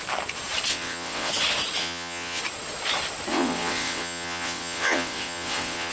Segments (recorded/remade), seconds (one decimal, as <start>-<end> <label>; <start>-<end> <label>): 0.0-0.7 recorded; 0.7-1.3 remade; 1.3-1.8 recorded; 1.8-2.4 remade; 2.4-3.3 recorded; 3.3-5.9 remade